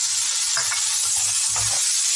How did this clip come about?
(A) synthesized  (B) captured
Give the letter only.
B